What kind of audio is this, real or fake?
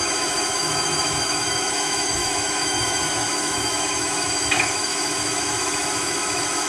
fake